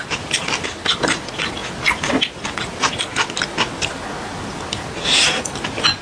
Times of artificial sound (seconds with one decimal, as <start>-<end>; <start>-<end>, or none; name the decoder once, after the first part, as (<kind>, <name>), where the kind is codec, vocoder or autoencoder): none